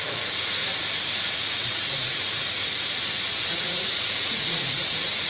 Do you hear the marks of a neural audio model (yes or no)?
yes